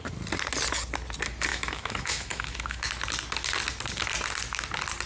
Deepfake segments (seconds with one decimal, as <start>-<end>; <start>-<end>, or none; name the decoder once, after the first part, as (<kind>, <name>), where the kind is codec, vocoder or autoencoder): 1.5-2.9 (autoencoder, DAC-VAE)